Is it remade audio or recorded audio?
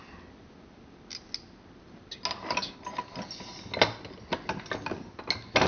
recorded